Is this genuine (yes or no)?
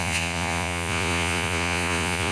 no